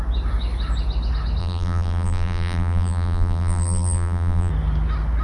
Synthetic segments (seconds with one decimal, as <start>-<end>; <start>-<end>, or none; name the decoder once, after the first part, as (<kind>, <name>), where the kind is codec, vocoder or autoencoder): 1.4-4.5 (vocoder, BigVGAN v2)